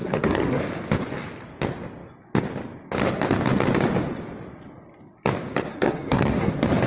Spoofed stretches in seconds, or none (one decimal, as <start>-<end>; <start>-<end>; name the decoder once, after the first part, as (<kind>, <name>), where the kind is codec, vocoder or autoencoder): 0.0-0.6 (codec, SNAC); 5.7-6.5